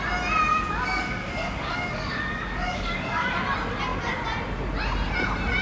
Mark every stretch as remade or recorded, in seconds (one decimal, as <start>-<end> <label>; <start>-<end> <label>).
0.0-0.5 recorded; 0.5-3.3 remade; 3.3-5.6 recorded